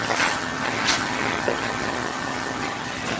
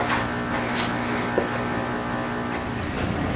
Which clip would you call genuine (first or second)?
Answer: second